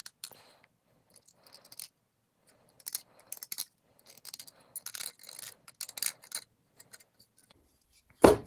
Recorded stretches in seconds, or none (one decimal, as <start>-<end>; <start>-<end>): 4.7-8.5